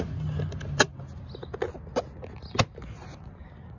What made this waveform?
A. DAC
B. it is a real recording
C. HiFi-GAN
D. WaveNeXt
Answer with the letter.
B